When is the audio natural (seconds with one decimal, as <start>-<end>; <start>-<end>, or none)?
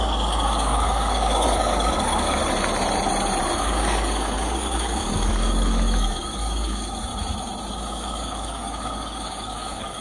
2.4-3.6; 7.1-7.9